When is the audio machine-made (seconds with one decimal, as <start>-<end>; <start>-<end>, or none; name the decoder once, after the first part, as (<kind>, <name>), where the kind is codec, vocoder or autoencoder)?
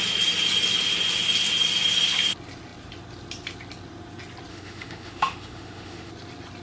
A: 4.5-6.1 (autoencoder, DAC-VAE)